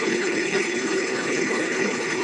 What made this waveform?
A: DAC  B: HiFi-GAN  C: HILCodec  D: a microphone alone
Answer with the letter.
C